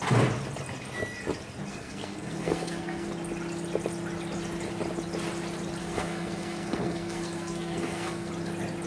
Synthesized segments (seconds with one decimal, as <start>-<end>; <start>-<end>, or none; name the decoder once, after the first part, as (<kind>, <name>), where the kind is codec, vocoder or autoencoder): 1.7-3.1 (codec, SNAC); 5.8-8.3